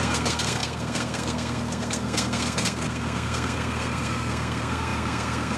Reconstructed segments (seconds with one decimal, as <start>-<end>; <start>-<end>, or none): 0.0-5.6